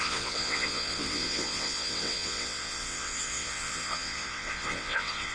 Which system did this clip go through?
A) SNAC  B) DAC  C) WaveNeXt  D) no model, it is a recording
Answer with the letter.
C